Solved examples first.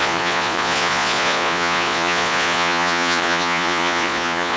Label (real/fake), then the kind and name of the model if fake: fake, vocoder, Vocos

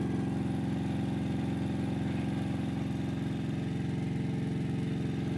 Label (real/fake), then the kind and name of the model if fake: real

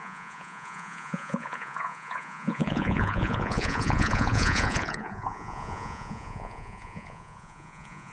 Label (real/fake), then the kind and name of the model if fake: fake, vocoder, Vocos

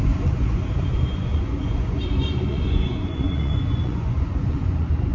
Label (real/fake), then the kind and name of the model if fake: fake, vocoder, Vocos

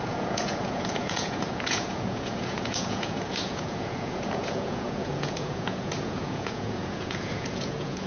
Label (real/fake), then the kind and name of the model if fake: fake, vocoder, Vocos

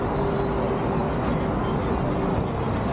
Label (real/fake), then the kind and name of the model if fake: real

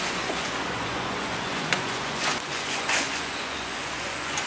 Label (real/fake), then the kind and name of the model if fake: fake, vocoder, Vocos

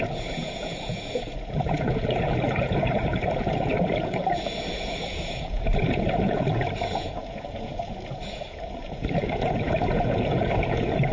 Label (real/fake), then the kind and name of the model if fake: fake, vocoder, Vocos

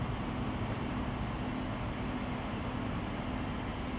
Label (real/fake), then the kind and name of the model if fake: real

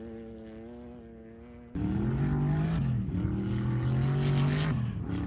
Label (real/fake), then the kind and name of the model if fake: real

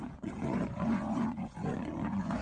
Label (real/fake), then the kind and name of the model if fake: fake, vocoder, Vocos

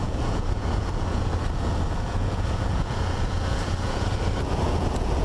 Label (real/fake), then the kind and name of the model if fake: fake, vocoder, Vocos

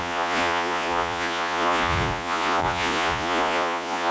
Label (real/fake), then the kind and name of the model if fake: fake, vocoder, Vocos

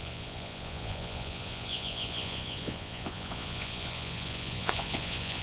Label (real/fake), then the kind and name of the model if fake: fake, vocoder, Vocos